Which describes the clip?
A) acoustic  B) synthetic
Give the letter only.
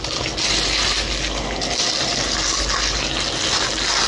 A